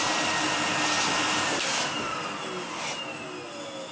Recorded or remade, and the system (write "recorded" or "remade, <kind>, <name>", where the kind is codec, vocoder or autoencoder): recorded